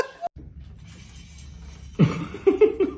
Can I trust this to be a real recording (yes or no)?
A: yes